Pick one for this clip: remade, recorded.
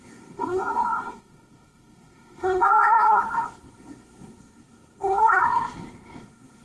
remade